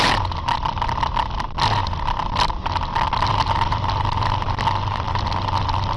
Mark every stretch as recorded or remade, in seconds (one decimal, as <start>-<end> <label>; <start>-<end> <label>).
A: 0.0-1.8 recorded; 1.8-5.1 remade; 5.1-6.0 recorded